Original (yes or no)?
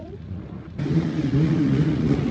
no